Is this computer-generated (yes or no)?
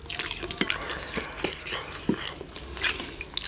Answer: no